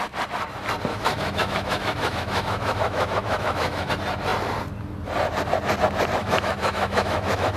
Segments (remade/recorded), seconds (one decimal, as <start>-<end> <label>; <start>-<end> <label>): 0.0-0.9 recorded; 0.9-3.9 remade; 3.9-6.2 recorded; 6.2-7.6 remade